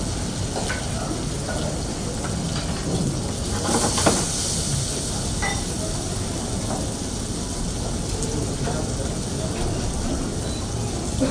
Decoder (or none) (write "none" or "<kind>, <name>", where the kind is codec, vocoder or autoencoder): none